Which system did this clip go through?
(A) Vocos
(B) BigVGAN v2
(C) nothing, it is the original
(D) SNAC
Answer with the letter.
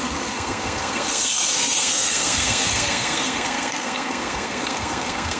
D